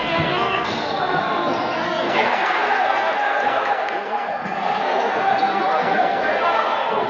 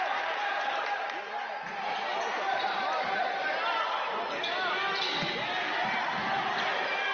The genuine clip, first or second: second